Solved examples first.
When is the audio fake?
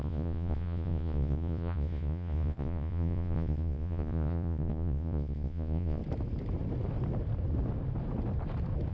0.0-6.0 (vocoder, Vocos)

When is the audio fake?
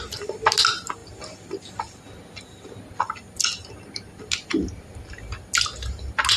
none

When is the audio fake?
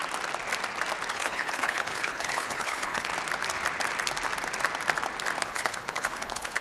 1.1-3.1 (codec, HILCodec); 5.4-6.6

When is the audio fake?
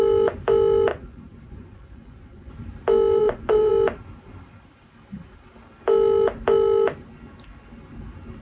0.9-2.5 (vocoder, Vocos); 3.2-3.7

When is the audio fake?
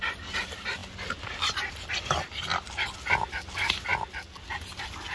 none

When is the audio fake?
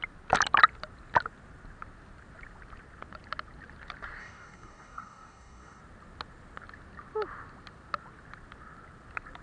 4.2-5.8 (codec, DAC)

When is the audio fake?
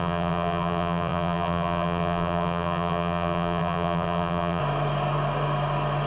0.0-4.6 (vocoder, BigVGAN v2)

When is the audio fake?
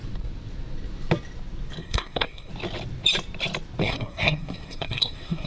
1.8-2.5 (codec, SNAC); 3.8-5.5